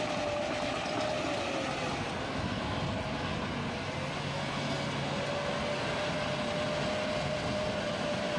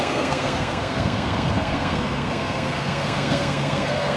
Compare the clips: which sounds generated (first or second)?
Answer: second